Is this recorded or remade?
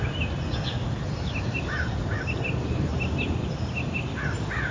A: recorded